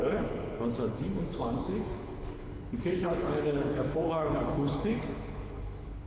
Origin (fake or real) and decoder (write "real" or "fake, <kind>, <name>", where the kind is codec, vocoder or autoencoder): fake, codec, HILCodec